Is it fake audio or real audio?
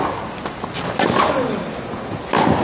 real